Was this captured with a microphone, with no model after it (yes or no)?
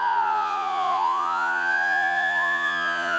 no